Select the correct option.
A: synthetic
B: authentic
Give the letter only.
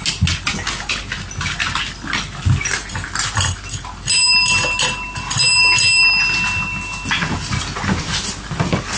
B